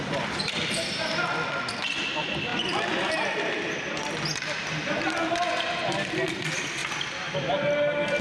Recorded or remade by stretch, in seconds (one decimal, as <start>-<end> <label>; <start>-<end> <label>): 0.0-2.5 recorded; 2.5-3.7 remade; 3.7-8.2 recorded